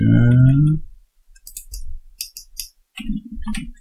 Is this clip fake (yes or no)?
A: no